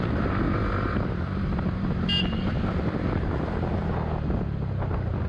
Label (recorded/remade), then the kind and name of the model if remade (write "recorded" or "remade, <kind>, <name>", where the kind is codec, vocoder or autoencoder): recorded